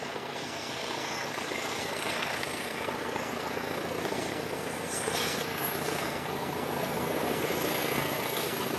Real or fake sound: fake